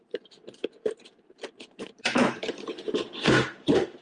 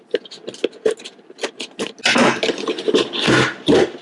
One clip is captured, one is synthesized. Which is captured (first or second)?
second